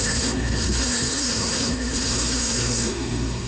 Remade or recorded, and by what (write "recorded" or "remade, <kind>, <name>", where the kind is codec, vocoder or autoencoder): remade, codec, SNAC